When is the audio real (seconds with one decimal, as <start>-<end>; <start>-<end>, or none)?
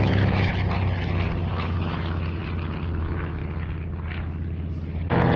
0.5-1.5; 2.4-3.0; 3.4-5.4